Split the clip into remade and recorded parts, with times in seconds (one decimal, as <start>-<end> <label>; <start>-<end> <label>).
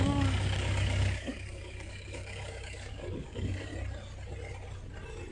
0.0-3.7 remade; 3.7-5.3 recorded